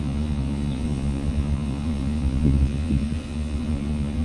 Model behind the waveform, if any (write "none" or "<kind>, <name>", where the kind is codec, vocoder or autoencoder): vocoder, Vocos